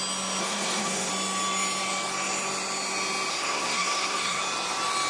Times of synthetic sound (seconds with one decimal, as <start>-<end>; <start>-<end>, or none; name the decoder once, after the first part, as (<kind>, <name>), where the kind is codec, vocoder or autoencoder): 0.4-1.1 (codec, SNAC); 3.3-4.4